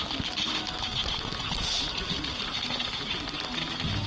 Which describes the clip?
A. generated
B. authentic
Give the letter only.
B